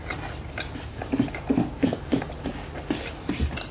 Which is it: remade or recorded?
recorded